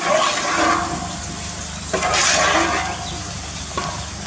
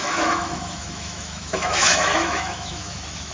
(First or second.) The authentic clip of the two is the first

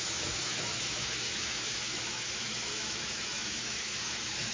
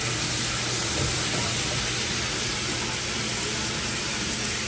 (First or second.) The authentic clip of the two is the second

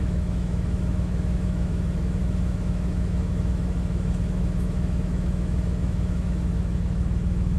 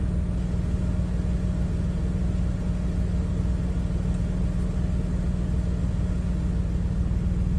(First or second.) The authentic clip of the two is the second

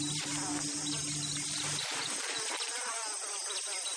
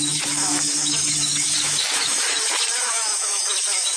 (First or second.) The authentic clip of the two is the first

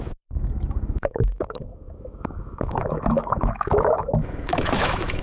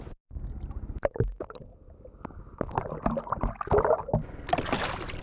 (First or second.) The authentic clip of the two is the second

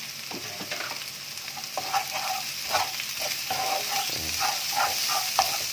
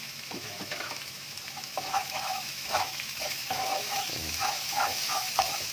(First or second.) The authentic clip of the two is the first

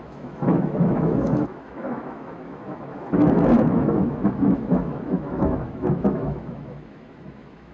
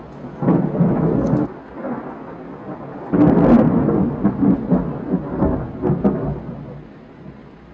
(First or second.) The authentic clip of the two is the second